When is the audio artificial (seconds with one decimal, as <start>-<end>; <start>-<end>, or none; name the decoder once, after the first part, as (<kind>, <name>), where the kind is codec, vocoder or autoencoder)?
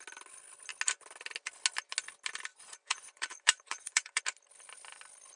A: 2.5-4.2 (vocoder, Vocos)